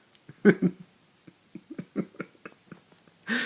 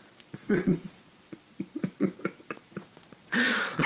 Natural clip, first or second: first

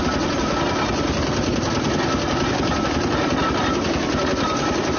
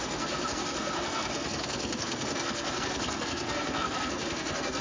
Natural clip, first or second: first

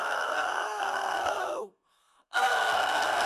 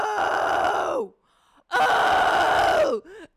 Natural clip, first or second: second